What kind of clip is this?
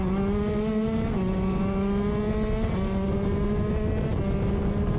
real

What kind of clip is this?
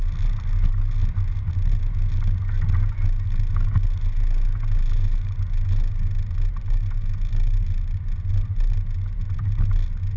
real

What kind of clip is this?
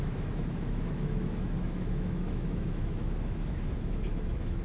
fake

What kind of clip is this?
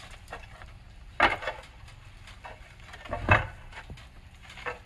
real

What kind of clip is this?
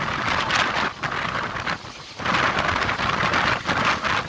real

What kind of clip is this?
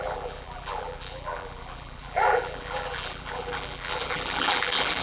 fake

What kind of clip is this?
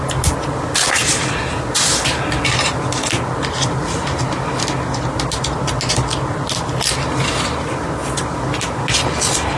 real